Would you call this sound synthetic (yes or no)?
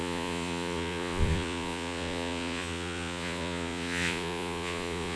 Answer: yes